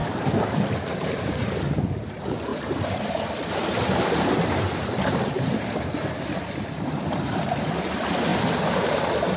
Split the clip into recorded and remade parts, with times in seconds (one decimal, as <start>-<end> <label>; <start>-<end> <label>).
0.0-1.6 remade; 1.6-2.5 recorded; 2.5-5.9 remade; 5.9-9.4 recorded